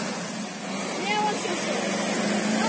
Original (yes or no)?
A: yes